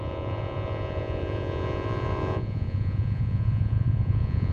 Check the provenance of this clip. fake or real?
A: fake